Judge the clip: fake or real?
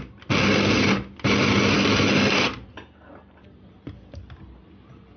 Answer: real